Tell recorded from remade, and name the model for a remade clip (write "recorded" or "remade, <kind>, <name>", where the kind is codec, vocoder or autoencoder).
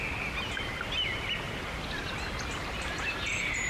recorded